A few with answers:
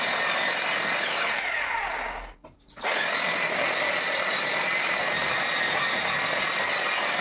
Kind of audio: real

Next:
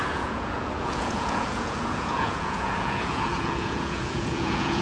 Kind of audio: fake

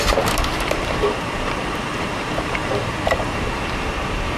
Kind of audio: fake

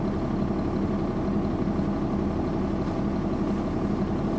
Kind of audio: real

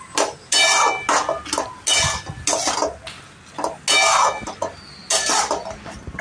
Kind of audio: real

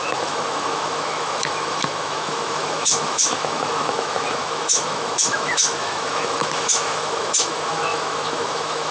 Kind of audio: fake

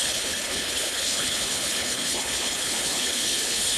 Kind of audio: fake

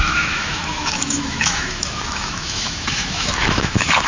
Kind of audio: fake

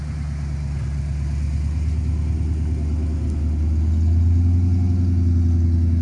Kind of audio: real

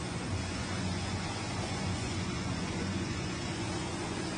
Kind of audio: fake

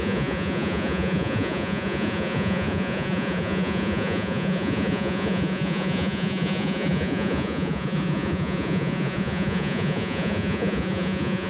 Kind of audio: fake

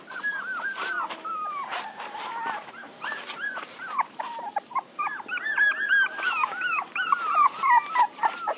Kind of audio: fake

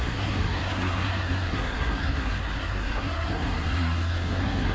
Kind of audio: fake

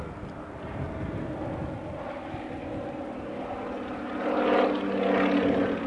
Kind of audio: real